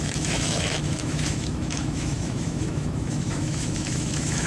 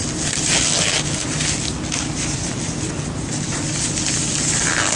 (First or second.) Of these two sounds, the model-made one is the first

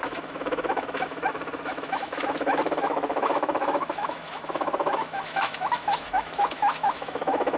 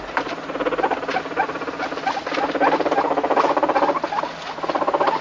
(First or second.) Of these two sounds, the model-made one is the first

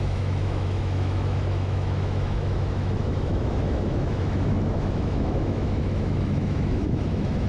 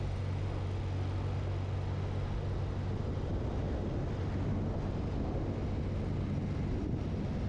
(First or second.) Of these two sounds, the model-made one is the first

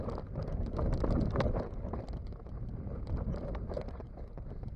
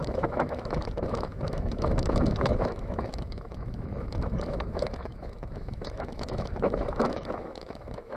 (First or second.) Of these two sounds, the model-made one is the second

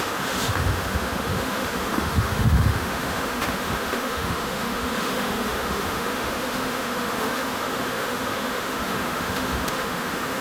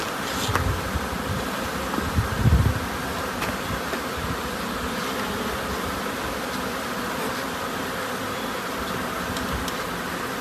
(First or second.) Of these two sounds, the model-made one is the first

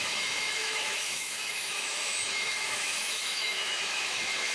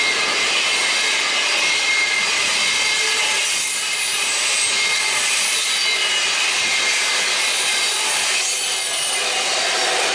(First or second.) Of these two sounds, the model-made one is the first